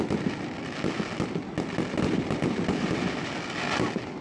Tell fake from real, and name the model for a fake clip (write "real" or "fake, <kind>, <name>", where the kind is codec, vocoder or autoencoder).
real